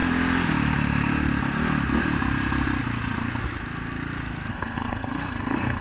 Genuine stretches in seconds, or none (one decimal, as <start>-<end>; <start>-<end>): 0.0-4.5